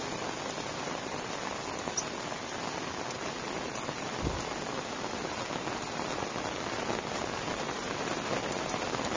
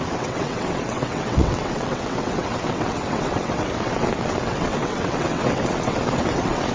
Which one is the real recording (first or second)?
first